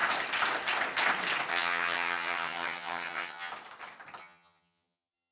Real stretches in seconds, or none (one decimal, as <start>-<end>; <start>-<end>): 0.0-1.5; 3.5-4.2